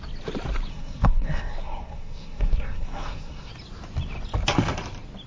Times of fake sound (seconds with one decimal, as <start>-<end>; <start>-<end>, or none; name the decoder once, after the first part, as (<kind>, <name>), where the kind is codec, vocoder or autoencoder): 0.7-3.5 (codec, SNAC)